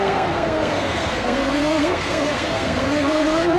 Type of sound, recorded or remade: remade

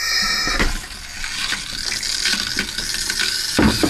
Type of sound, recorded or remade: recorded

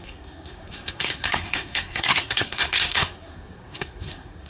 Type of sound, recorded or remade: remade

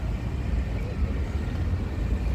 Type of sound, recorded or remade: recorded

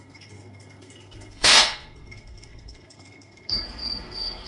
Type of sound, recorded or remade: remade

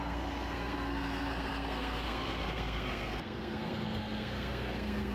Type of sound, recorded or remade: remade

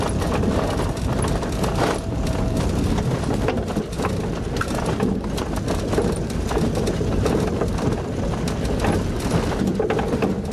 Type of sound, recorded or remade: recorded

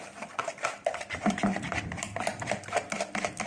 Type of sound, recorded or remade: recorded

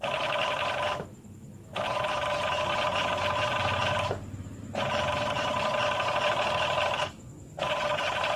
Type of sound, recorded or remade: recorded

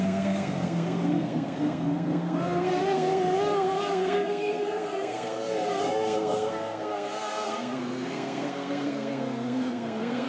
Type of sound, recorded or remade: remade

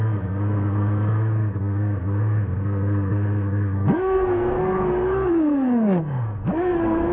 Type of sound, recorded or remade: remade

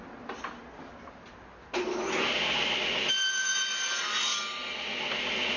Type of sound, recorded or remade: recorded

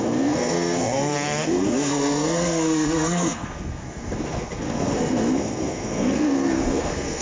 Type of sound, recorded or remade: remade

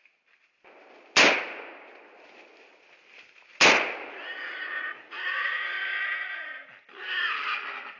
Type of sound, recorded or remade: recorded